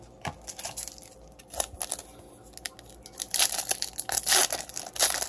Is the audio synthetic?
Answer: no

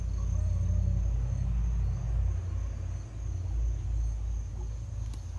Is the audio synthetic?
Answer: no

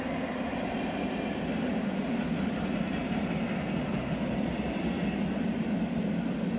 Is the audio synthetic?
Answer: no